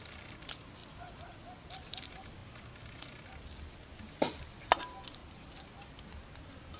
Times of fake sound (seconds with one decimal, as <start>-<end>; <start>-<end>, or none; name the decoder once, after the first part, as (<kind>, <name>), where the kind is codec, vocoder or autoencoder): none